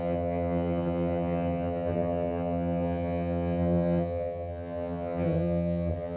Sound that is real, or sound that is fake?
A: fake